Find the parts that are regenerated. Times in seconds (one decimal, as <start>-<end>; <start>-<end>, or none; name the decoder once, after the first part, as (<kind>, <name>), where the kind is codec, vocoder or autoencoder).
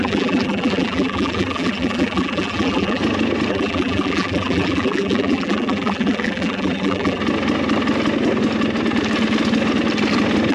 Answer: 0.0-3.0 (vocoder, BigVGAN v2); 3.5-7.2